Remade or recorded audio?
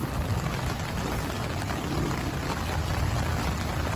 recorded